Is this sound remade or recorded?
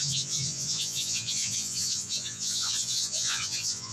remade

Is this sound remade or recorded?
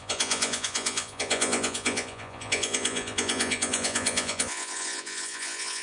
remade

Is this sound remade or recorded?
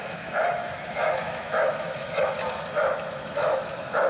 remade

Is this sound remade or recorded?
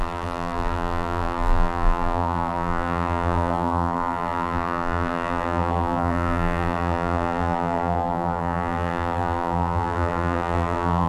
remade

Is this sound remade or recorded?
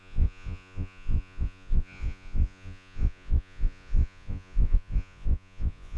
remade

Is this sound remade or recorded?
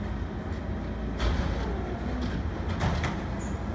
recorded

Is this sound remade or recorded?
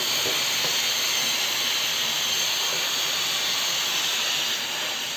recorded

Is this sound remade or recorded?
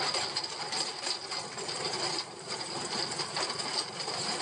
recorded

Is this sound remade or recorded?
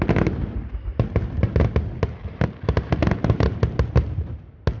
recorded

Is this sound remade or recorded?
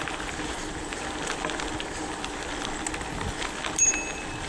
recorded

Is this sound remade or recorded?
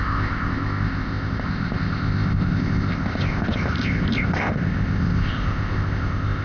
remade